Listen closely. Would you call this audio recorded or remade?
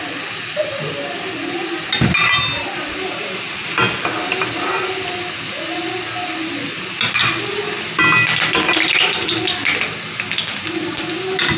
recorded